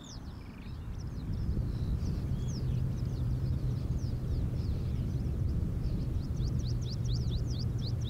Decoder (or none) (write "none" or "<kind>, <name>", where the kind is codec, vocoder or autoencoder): vocoder, BigVGAN v2